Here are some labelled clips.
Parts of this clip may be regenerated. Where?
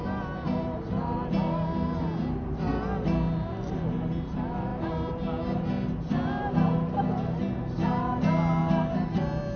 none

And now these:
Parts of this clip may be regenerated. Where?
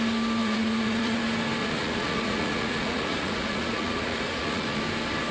0.4-1.2 (vocoder, Vocos); 1.6-4.8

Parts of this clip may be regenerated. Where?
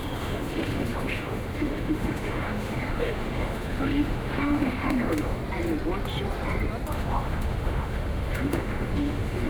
0.0-5.4 (autoencoder, DAC-VAE); 6.9-9.5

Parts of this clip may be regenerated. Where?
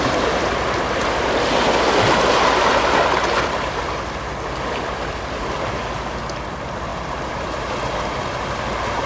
none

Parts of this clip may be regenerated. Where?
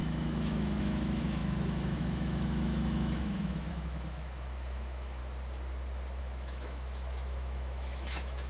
0.0-5.2 (autoencoder, DAC-VAE); 6.2-8.5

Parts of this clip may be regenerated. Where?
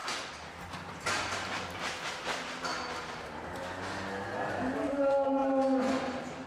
0.9-2.7 (vocoder, BigVGAN v2); 4.4-5.4; 6.0-6.5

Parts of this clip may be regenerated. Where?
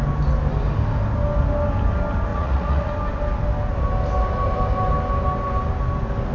2.3-2.9 (vocoder, Vocos)